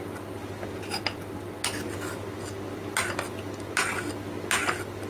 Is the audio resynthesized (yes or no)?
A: no